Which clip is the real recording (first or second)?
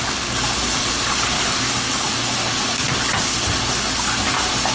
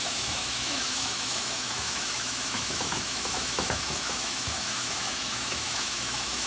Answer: first